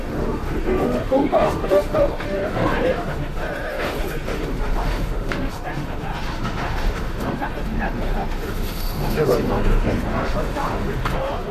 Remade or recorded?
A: remade